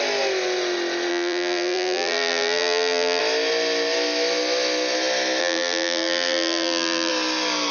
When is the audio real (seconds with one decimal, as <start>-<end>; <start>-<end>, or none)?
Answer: 0.0-1.1; 3.2-5.4; 7.1-7.7

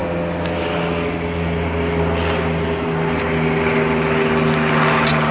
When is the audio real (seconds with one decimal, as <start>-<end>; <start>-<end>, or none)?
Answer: 0.0-5.3

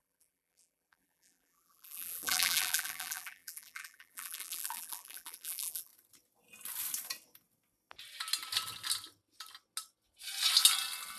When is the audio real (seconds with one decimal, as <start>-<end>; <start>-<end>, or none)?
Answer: 5.9-11.2

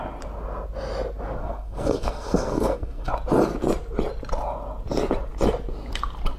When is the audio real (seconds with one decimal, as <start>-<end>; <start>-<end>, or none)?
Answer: 0.0-1.4; 3.1-6.4

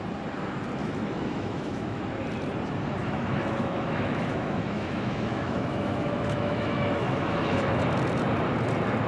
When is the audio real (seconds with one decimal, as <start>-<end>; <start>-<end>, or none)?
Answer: 0.0-0.8; 2.0-3.0; 7.8-9.1

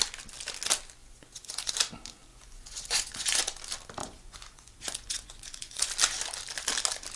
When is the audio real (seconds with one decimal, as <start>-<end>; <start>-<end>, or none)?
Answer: 0.0-1.0; 1.7-2.3; 3.4-4.0; 5.9-7.2